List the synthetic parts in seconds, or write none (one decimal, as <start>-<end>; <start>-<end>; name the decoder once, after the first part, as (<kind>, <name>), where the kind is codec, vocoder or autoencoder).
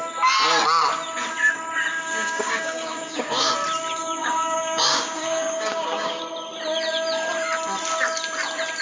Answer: 1.9-3.5 (codec, DAC); 4.2-6.2